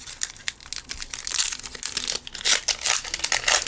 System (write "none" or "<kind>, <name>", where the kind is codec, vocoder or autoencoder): none